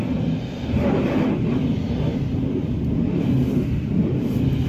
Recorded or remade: recorded